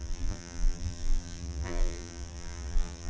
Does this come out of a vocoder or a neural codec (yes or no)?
yes